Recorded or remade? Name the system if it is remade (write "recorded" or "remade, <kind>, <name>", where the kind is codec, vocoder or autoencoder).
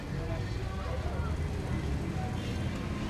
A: recorded